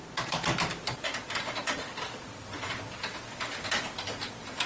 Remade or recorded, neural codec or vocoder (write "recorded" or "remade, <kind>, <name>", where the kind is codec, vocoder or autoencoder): recorded